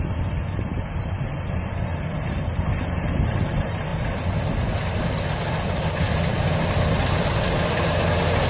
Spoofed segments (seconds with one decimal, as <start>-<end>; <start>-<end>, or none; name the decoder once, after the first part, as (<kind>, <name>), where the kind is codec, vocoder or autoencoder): none